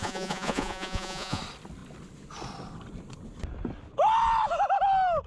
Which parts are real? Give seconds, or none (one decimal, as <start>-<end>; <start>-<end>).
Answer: 1.4-5.3